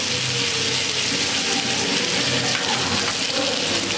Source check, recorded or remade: recorded